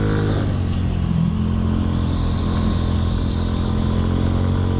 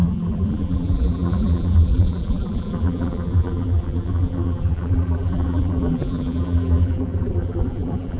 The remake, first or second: second